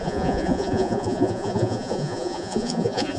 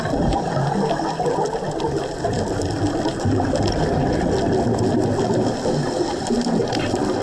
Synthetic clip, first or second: first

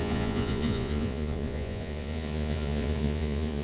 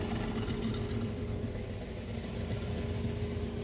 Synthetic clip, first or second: first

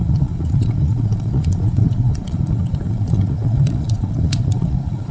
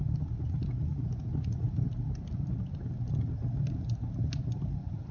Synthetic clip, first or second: first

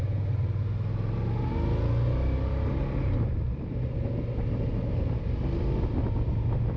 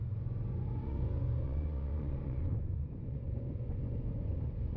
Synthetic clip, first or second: second